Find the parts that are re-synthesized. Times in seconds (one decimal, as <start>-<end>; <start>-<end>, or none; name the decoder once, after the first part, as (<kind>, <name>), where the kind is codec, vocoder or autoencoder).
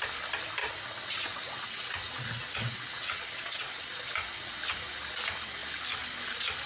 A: 0.6-4.6 (vocoder, WaveNeXt)